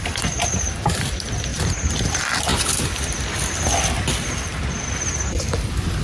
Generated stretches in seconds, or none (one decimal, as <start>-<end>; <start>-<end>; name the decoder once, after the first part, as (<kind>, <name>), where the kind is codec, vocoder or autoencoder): 0.0-1.5 (vocoder, BigVGAN v2); 2.1-2.5; 5.4-6.0